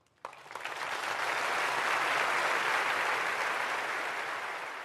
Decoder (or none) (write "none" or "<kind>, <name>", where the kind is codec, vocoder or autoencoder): none